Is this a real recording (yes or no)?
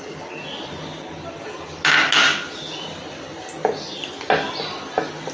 yes